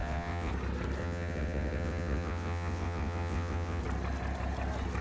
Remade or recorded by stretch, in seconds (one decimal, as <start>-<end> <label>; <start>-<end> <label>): 0.0-0.5 remade; 0.5-1.0 recorded; 1.0-3.8 remade; 3.8-5.0 recorded